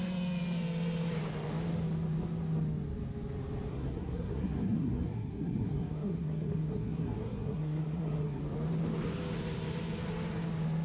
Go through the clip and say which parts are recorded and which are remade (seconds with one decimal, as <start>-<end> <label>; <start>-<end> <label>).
0.0-3.7 recorded; 3.7-8.4 remade; 8.4-10.8 recorded